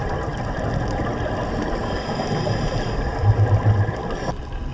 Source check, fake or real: real